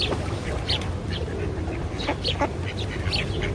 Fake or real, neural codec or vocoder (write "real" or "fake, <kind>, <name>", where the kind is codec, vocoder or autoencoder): real